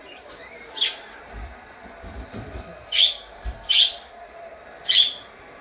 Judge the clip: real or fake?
fake